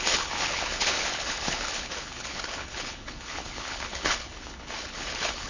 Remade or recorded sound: remade